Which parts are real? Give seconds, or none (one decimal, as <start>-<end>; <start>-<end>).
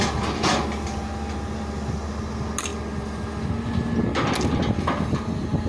0.0-5.7